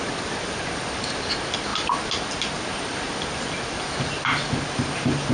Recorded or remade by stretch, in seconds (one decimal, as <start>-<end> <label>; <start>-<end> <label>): 0.0-5.3 recorded